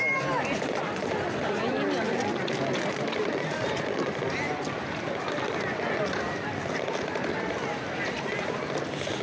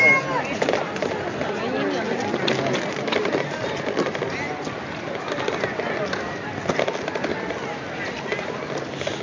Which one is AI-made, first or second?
first